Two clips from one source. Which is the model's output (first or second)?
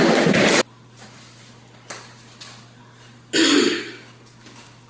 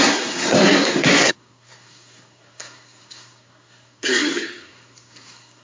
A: second